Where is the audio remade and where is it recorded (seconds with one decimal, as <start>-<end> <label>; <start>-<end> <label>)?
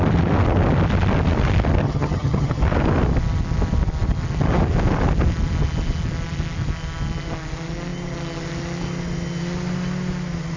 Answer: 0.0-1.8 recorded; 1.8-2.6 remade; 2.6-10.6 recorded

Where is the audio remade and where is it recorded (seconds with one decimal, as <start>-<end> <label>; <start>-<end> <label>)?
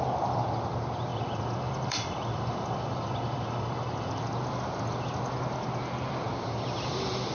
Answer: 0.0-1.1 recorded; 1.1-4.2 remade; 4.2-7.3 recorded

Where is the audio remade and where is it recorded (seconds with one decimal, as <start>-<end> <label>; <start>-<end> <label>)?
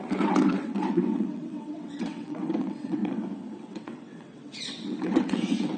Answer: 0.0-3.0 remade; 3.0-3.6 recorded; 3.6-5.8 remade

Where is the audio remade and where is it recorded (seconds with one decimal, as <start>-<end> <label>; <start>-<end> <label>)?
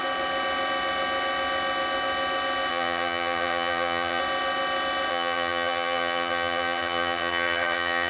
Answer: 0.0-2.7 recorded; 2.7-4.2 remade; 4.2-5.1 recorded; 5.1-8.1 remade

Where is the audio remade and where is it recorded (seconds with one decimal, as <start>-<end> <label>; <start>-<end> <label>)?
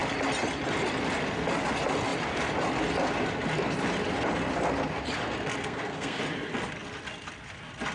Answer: 0.0-5.6 recorded; 5.6-6.2 remade; 6.2-7.9 recorded